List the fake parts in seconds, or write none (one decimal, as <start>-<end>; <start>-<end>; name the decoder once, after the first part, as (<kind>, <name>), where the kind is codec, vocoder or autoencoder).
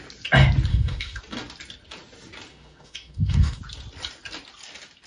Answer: 0.7-1.2 (autoencoder, DAC-VAE); 2.5-3.6